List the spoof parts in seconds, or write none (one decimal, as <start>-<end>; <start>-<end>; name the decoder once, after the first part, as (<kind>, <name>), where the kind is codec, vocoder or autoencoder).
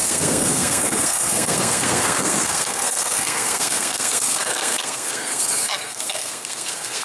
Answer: 0.0-7.0 (codec, SNAC)